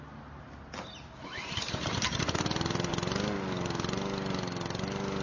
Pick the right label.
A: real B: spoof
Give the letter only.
A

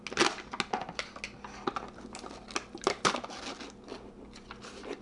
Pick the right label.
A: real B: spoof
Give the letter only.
A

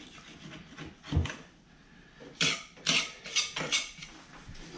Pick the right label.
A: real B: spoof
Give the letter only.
A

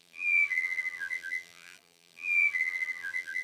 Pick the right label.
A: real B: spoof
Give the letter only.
B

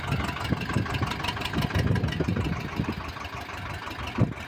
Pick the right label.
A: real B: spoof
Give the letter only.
A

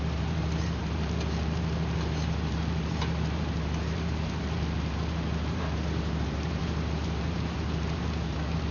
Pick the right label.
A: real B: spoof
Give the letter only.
B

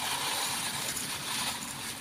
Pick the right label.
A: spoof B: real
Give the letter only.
A